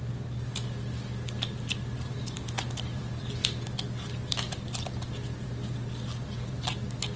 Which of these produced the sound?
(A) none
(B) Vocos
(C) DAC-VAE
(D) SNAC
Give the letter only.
A